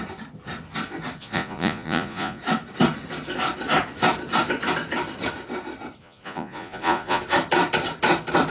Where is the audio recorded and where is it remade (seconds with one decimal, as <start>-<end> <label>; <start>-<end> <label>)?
0.0-1.2 recorded; 1.2-2.4 remade; 2.4-6.0 recorded; 6.0-7.2 remade; 7.2-8.5 recorded

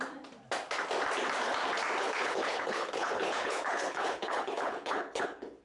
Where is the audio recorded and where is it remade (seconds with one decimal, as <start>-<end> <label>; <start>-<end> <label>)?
0.0-2.0 recorded; 2.0-5.6 remade

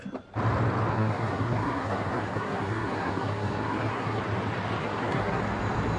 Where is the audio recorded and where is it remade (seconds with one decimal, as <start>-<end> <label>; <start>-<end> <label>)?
0.0-0.9 recorded; 0.9-4.2 remade; 4.2-4.8 recorded; 4.8-5.4 remade; 5.4-6.0 recorded

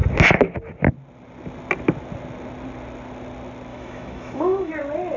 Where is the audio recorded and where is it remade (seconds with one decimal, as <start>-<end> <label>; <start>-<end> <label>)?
0.0-3.7 recorded; 3.7-4.7 remade; 4.7-5.2 recorded

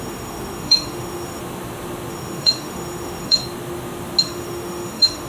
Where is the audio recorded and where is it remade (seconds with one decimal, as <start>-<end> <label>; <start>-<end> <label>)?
0.0-1.4 remade; 1.4-2.1 recorded; 2.1-3.4 remade; 3.4-4.2 recorded; 4.2-5.3 remade

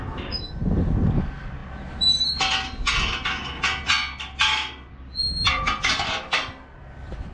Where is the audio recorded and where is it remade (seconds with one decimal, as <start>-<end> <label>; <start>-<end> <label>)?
0.0-7.3 recorded